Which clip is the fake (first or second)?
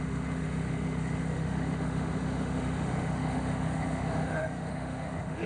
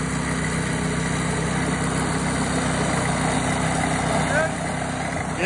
first